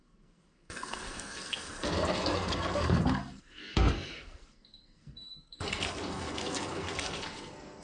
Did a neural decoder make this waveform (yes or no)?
yes